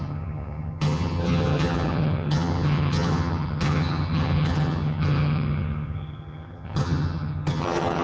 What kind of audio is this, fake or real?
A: fake